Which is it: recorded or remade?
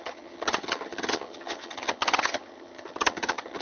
remade